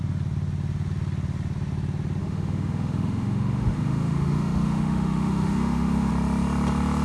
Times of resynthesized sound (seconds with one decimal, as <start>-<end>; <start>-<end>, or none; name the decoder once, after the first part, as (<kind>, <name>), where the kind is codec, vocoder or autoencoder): 2.2-6.1 (autoencoder, DAC-VAE)